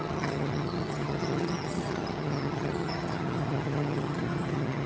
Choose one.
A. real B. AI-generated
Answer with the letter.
B